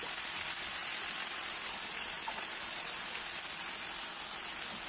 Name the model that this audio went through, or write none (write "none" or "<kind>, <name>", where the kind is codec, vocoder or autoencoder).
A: none